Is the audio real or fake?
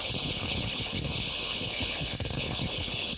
fake